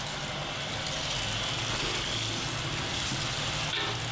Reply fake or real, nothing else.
real